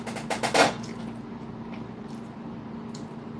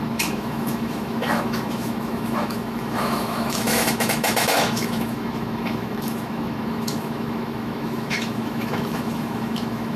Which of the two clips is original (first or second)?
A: first